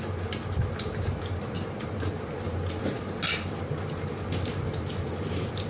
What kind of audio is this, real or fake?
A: real